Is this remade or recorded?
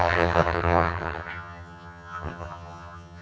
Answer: remade